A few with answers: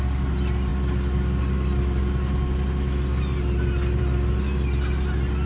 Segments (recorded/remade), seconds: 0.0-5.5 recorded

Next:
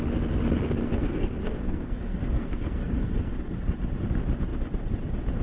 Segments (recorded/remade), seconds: 0.0-0.8 recorded; 0.8-3.3 remade; 3.3-5.4 recorded

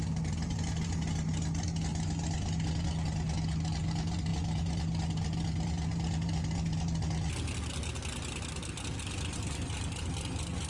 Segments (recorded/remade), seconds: 0.0-10.7 recorded